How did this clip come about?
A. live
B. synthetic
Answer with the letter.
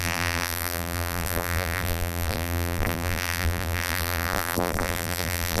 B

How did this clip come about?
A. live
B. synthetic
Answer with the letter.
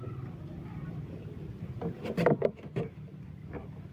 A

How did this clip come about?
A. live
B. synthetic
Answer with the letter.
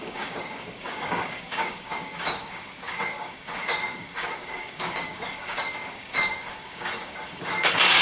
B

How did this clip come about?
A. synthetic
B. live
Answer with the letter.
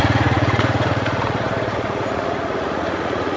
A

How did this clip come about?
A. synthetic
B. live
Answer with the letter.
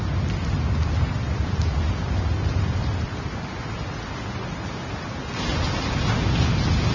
B